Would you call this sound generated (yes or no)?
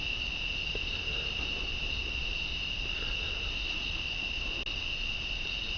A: no